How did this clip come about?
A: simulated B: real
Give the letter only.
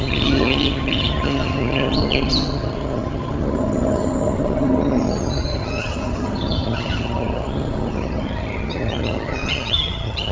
A